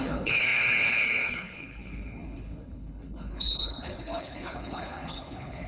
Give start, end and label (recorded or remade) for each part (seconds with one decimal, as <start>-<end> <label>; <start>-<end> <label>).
0.0-5.7 remade